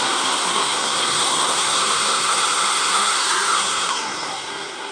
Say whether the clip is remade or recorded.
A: remade